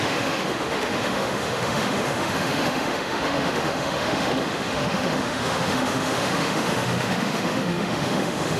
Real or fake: fake